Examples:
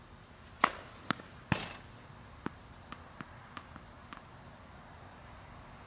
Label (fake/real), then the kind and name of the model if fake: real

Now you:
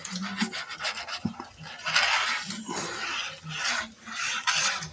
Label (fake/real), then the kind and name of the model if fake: real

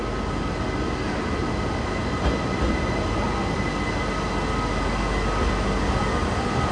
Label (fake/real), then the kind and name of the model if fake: real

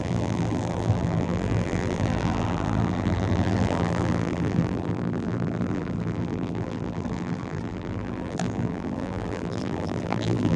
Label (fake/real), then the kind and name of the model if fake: fake, vocoder, BigVGAN v2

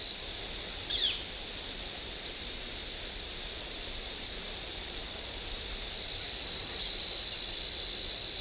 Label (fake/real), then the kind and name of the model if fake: fake, vocoder, BigVGAN v2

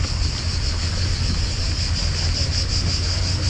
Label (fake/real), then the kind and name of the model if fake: real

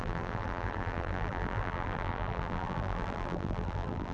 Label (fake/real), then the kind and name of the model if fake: fake, vocoder, BigVGAN v2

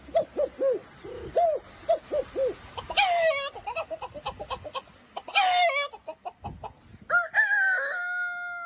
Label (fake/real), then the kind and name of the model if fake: real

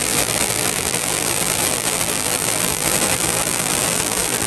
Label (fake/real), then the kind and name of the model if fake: fake, vocoder, BigVGAN v2